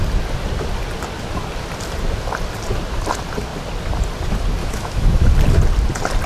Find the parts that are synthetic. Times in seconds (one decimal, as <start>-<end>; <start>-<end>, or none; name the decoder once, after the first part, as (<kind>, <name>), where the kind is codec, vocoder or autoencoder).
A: 4.6-5.3 (autoencoder, DAC-VAE)